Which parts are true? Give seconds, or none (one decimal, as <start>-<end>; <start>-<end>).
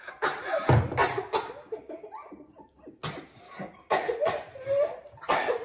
0.0-5.6